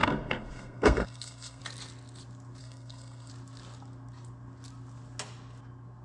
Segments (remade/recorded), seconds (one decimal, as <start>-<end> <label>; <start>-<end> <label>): 0.0-1.6 remade; 1.6-2.6 recorded; 2.6-3.3 remade; 3.3-6.0 recorded